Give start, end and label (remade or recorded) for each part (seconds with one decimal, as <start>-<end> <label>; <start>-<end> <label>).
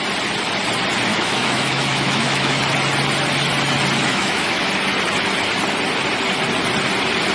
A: 0.0-1.1 recorded; 1.1-2.6 remade; 2.6-4.1 recorded; 4.1-4.7 remade; 4.7-7.3 recorded